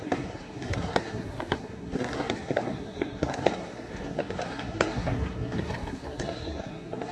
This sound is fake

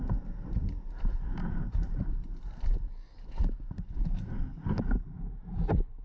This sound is fake